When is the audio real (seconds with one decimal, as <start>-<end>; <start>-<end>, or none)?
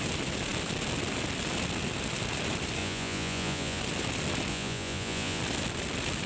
0.0-2.8; 3.8-4.5; 5.4-6.3